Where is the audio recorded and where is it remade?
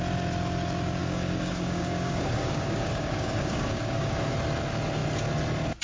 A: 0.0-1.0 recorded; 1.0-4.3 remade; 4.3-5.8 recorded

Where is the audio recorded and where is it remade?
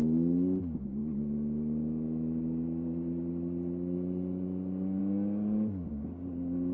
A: 0.0-6.7 recorded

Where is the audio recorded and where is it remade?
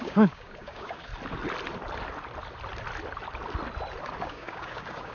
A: 0.0-1.1 remade; 1.1-4.2 recorded; 4.2-5.1 remade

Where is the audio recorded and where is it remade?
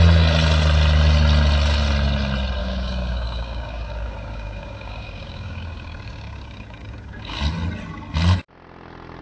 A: 0.0-2.6 recorded; 2.6-7.4 remade; 7.4-9.2 recorded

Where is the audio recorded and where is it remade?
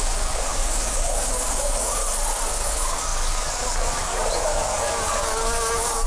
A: 0.0-2.0 remade; 2.0-2.5 recorded; 2.5-6.1 remade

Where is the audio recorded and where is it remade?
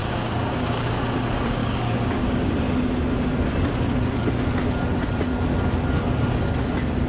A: 0.0-1.0 remade; 1.0-1.6 recorded; 1.6-2.5 remade; 2.5-7.1 recorded